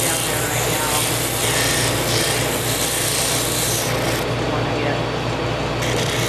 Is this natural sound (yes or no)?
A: yes